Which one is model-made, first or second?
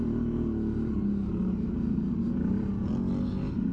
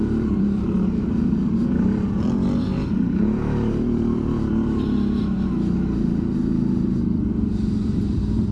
second